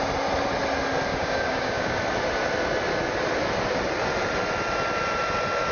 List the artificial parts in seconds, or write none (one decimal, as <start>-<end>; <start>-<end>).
1.1-2.0